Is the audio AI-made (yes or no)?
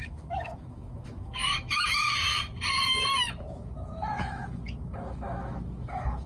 yes